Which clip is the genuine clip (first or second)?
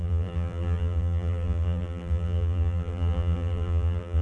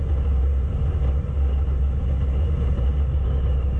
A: second